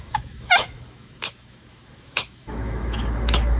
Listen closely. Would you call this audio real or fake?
fake